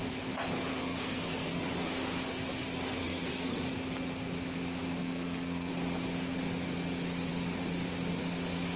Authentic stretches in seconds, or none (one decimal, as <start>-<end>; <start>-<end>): 0.0-0.7; 1.6-3.0; 3.6-5.0; 5.7-8.8